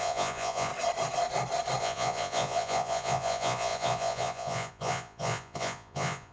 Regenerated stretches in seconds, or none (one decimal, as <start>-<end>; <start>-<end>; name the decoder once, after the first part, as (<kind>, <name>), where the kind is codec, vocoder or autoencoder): 0.0-0.7 (vocoder, Vocos); 1.8-6.3

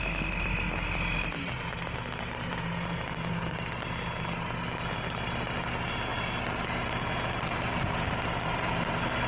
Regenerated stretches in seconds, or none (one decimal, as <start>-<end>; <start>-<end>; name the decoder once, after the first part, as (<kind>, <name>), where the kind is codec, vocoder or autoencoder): 2.5-3.4 (vocoder, Vocos)

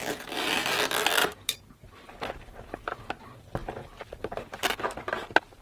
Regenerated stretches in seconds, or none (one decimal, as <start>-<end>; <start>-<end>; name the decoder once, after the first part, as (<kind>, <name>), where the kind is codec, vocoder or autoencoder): 1.2-2.4 (vocoder, BigVGAN v2)